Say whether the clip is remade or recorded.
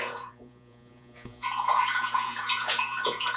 remade